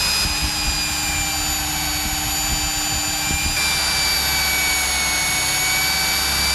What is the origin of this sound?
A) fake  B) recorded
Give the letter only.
B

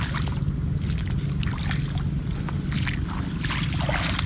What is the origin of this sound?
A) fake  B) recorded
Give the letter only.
B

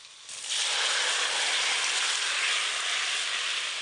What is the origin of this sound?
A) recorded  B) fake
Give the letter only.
A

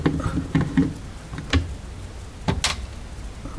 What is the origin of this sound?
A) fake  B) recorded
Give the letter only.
B